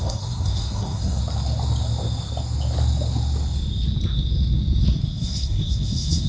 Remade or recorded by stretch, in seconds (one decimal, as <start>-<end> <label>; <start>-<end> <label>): 0.0-1.2 remade; 1.2-5.0 recorded; 5.0-6.3 remade